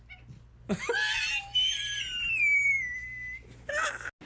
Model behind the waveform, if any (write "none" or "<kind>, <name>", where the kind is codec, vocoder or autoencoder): none